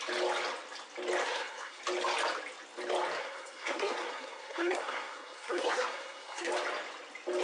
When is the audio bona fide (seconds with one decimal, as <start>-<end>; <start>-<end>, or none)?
0.0-1.2; 1.8-3.2; 6.5-7.4